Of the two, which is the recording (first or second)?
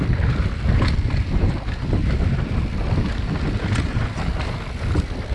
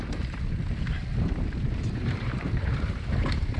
first